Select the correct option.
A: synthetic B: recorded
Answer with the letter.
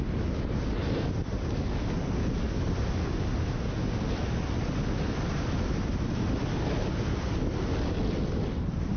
B